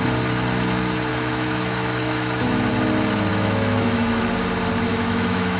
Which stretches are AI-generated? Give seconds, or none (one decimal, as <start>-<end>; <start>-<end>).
1.1-2.7; 3.3-4.2; 4.9-5.6